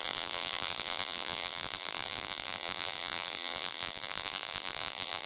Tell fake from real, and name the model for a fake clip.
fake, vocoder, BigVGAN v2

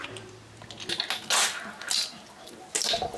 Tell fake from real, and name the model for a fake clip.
real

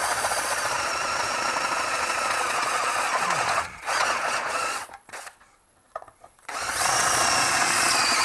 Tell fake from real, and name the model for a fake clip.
fake, vocoder, Vocos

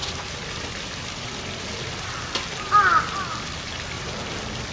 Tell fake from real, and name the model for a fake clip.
real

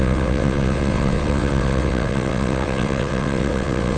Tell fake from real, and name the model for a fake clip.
fake, vocoder, WaveNeXt